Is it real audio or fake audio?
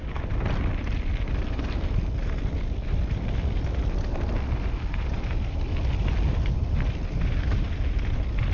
real